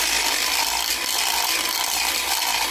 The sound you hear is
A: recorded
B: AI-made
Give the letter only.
A